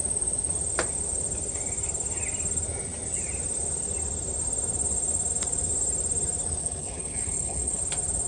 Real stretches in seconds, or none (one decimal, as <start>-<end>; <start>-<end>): 0.0-6.6; 7.8-8.3